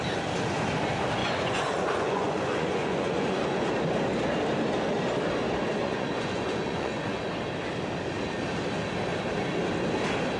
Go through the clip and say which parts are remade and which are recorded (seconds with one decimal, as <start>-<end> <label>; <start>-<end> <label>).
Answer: 0.0-1.2 recorded; 1.2-3.7 remade; 3.7-5.8 recorded; 5.8-7.3 remade; 7.3-10.4 recorded